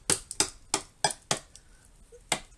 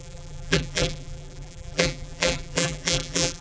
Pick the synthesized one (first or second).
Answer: second